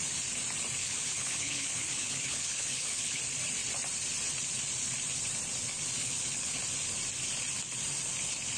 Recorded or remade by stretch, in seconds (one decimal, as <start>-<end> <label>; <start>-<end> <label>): 0.0-0.8 recorded; 0.8-3.2 remade; 3.2-6.0 recorded; 6.0-6.6 remade; 6.6-8.6 recorded